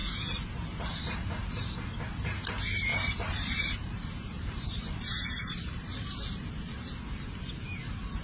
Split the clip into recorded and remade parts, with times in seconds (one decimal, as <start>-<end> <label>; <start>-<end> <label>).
0.0-1.6 remade; 1.6-2.9 recorded; 2.9-6.5 remade; 6.5-8.2 recorded